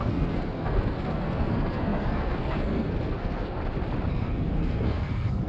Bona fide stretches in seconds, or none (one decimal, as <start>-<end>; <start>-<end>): 3.6-4.1